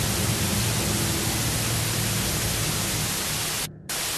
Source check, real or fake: real